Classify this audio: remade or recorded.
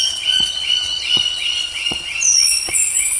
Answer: remade